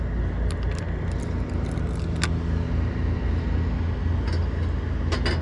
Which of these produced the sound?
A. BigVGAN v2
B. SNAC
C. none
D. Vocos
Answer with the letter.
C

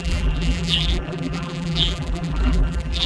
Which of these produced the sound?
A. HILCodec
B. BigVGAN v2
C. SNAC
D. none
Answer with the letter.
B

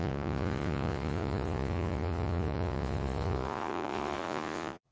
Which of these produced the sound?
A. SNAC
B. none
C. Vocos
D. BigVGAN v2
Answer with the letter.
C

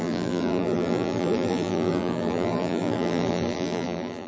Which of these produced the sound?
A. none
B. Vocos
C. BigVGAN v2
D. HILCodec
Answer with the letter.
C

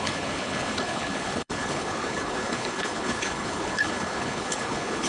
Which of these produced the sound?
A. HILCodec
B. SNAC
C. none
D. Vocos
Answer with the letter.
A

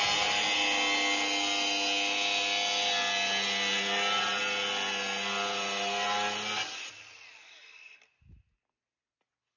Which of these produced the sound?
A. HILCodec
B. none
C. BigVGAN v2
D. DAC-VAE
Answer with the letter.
B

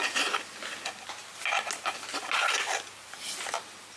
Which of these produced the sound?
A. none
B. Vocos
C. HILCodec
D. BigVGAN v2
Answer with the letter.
A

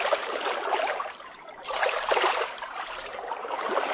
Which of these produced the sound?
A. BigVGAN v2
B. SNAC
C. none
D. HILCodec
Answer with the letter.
A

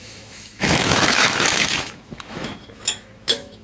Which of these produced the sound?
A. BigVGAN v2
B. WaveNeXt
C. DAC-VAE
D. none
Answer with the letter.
C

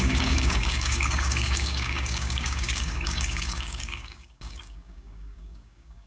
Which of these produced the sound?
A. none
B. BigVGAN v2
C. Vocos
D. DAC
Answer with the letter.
D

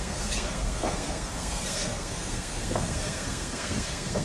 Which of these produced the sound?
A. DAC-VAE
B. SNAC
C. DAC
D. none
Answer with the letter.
B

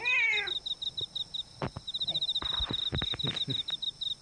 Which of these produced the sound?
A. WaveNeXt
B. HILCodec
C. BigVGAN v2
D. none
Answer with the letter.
D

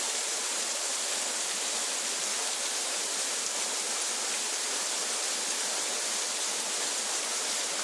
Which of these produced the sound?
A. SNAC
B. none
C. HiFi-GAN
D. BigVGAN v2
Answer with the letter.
B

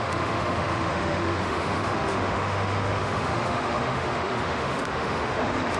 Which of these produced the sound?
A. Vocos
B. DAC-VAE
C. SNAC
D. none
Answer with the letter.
B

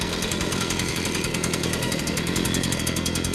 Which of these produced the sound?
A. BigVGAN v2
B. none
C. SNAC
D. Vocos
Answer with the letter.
C